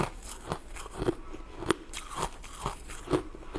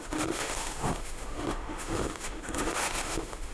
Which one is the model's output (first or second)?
second